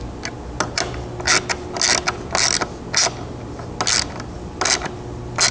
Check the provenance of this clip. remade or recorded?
recorded